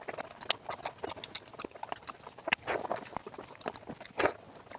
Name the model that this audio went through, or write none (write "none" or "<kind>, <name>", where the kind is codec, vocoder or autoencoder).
none